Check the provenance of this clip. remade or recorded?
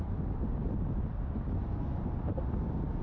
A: recorded